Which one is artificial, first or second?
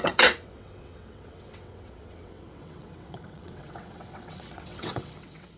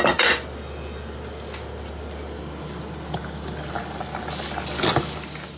first